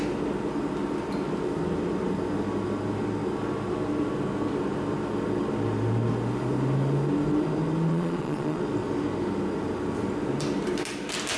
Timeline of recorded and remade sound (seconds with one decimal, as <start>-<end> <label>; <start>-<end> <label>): 0.0-7.9 recorded; 7.9-8.6 remade; 8.6-11.4 recorded